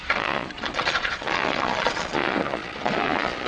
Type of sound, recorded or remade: remade